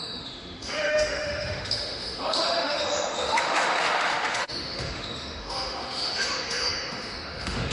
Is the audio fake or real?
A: fake